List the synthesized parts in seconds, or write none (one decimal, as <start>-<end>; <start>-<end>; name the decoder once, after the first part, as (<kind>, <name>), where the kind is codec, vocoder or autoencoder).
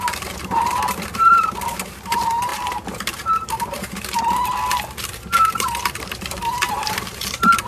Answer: 0.0-4.5 (vocoder, BigVGAN v2); 5.1-7.7